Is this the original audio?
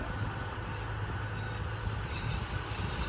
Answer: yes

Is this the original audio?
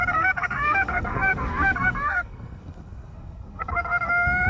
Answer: no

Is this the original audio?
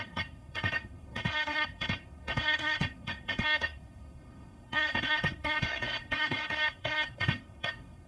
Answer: no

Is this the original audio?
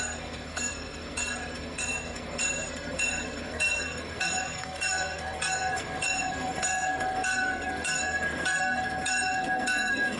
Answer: no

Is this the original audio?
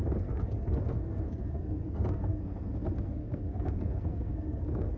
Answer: no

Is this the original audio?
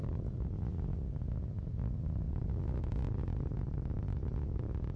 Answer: yes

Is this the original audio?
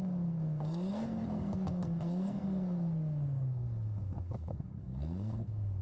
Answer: no